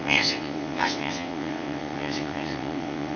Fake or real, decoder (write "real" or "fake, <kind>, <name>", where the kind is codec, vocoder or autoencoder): fake, vocoder, WaveNeXt